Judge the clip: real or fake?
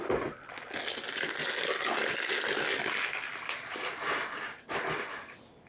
real